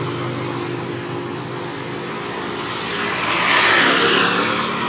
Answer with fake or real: real